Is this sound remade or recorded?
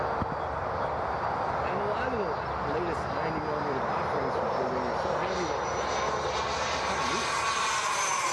recorded